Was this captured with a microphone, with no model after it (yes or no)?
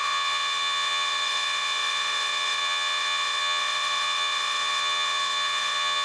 no